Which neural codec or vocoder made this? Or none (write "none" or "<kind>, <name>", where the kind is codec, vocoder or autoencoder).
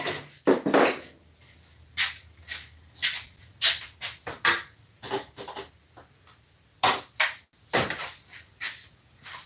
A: none